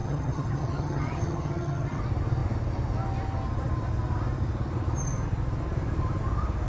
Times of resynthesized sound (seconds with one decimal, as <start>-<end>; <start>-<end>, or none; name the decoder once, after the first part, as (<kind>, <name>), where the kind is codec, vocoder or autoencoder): 0.0-2.0 (vocoder, HiFi-GAN)

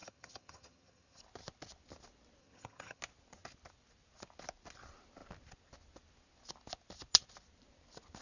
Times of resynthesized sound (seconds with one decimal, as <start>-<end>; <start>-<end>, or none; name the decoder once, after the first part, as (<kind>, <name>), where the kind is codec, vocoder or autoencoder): 0.0-1.2 (vocoder, HiFi-GAN); 2.4-3.0